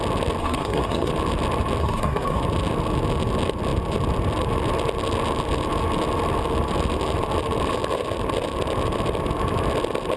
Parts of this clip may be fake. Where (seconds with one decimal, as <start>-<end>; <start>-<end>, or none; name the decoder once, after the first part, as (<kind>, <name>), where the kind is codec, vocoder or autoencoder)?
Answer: 0.4-1.1 (codec, SNAC); 1.8-2.4